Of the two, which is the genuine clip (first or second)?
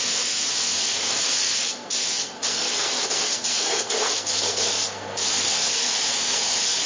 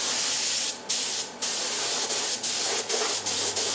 second